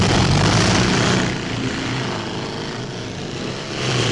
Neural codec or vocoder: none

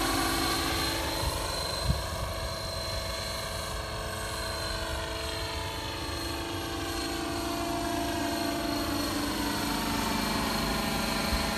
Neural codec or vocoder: none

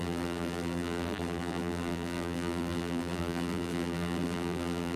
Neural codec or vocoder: vocoder, BigVGAN v2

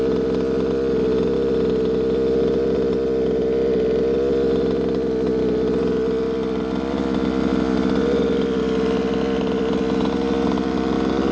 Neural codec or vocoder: none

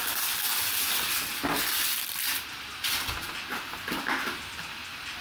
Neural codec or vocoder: none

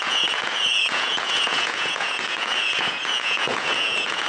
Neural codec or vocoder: vocoder, Vocos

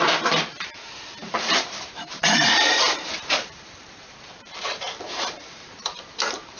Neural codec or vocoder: vocoder, BigVGAN v2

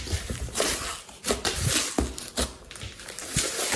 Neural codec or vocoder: none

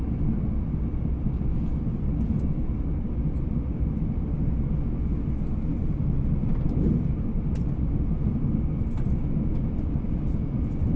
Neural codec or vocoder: none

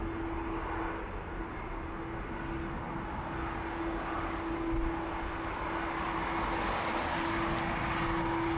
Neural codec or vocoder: none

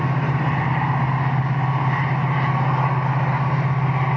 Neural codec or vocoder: none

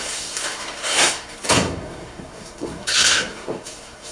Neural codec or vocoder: codec, SNAC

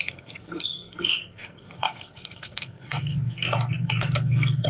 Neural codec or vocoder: codec, SNAC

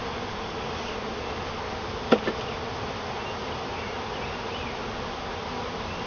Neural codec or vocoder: none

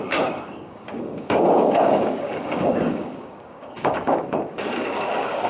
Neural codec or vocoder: codec, DAC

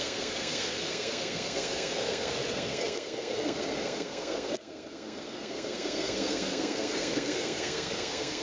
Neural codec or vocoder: codec, SNAC